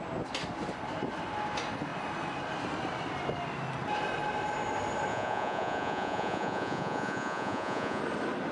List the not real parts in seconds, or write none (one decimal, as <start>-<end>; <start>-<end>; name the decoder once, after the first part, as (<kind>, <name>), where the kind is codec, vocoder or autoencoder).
5.1-8.0 (vocoder, Vocos)